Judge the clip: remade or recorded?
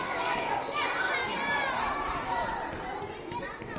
recorded